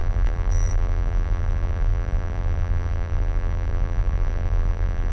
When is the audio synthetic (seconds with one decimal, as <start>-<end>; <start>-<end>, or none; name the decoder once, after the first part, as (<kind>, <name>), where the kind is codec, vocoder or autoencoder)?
0.0-5.1 (vocoder, BigVGAN v2)